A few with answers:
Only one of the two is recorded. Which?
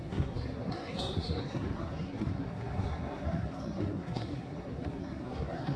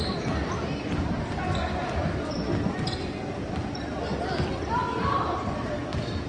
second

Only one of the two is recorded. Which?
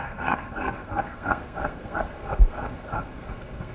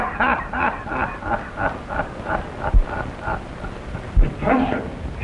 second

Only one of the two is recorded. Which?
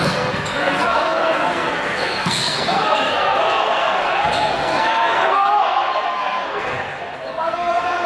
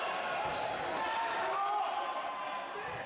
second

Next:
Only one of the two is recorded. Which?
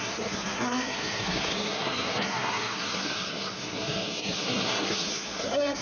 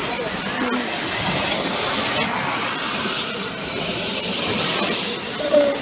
second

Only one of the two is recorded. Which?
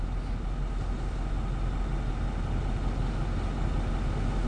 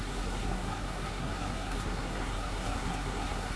first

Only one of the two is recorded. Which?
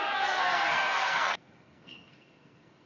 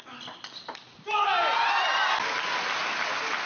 second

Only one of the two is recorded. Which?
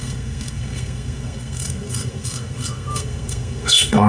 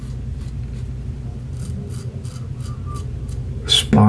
second